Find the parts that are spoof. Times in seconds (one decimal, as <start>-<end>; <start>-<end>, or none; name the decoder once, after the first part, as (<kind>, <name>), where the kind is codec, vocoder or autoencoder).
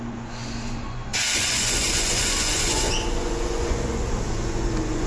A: 0.0-5.1 (vocoder, Vocos)